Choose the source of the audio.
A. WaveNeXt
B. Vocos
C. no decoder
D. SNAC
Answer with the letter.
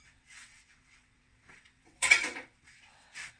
A